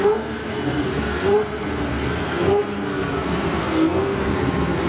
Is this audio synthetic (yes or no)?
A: yes